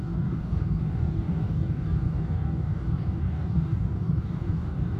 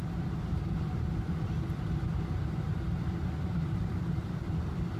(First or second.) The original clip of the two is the second